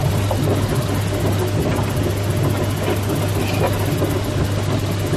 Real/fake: real